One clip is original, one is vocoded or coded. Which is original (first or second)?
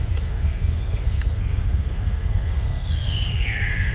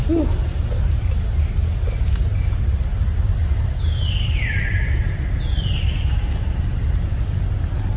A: second